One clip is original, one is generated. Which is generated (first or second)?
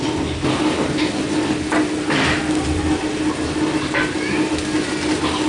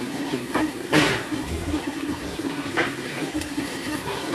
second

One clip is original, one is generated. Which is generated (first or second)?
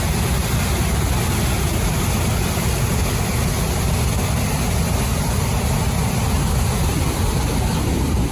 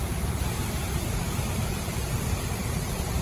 second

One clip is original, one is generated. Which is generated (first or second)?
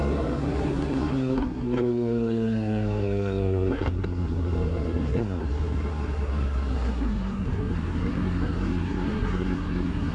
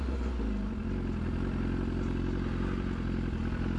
first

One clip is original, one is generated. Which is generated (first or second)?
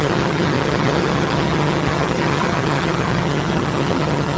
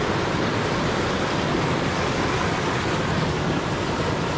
first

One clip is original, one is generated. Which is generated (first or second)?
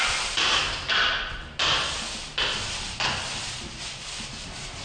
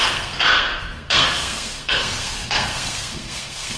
second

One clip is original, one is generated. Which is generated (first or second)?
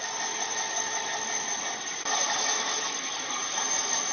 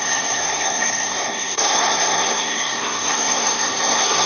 second